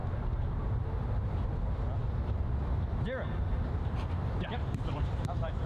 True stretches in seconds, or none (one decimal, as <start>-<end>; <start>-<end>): 0.0-3.4